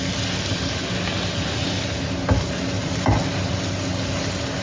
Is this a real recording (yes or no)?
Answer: yes